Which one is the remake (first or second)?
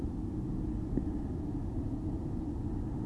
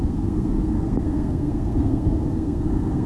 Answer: second